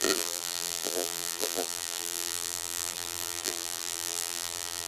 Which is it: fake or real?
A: fake